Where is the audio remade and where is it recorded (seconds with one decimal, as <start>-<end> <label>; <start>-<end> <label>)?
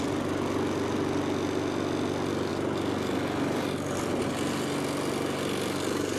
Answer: 0.0-6.2 recorded